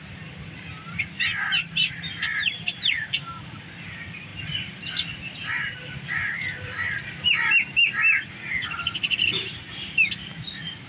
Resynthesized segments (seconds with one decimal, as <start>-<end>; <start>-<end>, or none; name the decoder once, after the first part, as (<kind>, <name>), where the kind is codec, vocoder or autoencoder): 0.0-10.9 (vocoder, BigVGAN v2)